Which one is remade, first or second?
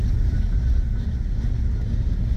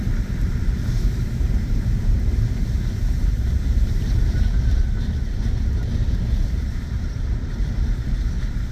second